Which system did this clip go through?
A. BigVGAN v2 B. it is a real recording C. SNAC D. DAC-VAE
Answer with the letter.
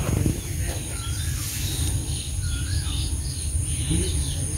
B